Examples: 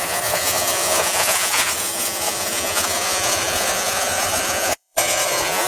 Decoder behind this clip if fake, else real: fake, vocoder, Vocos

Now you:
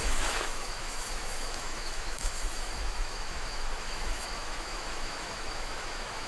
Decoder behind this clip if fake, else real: fake, autoencoder, DAC-VAE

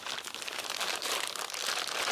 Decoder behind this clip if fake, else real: real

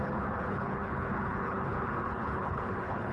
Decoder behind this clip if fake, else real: fake, codec, HILCodec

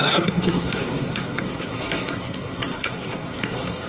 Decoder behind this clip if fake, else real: fake, codec, SNAC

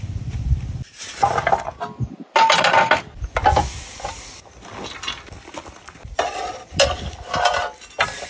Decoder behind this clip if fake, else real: real